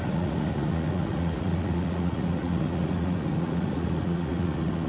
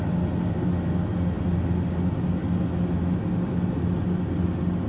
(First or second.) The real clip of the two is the second